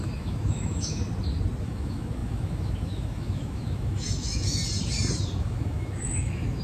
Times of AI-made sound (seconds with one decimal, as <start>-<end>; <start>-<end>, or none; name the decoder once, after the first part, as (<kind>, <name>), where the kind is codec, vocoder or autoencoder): 0.0-1.0 (autoencoder, DAC-VAE); 1.6-4.6; 5.4-6.6